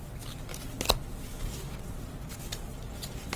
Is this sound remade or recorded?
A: recorded